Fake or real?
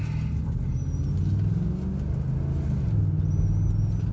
real